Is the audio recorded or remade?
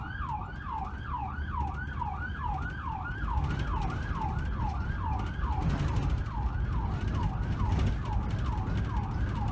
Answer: recorded